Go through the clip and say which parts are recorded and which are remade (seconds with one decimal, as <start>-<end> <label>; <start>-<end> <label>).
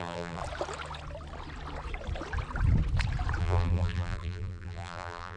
0.0-0.4 remade; 0.4-3.4 recorded; 3.4-5.4 remade